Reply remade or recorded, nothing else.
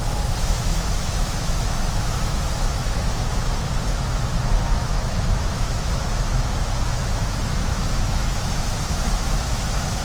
remade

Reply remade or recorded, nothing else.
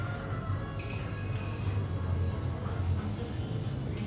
recorded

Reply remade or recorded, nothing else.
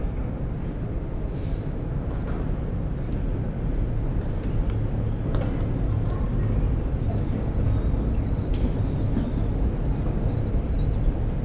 recorded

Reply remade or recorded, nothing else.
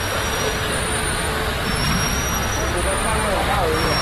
recorded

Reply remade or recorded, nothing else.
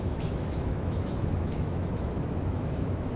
remade